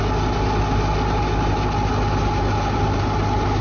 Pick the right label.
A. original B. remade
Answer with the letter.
A